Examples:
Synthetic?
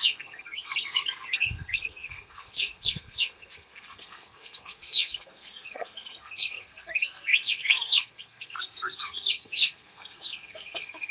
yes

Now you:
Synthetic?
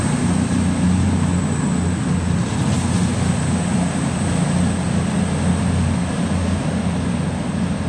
no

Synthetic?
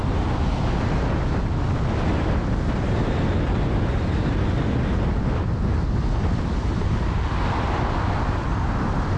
no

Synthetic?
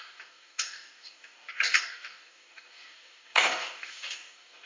yes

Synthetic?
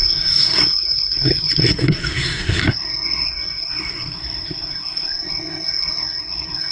yes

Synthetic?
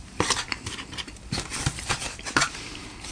yes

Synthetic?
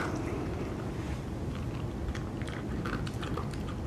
no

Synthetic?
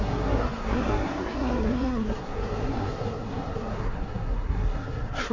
yes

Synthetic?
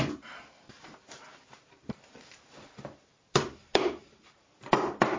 yes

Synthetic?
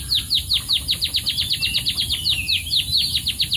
no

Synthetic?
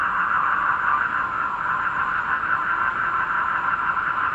no